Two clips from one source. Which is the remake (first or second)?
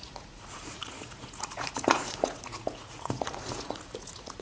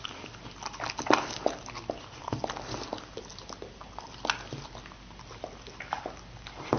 first